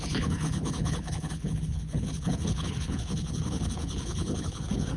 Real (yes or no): no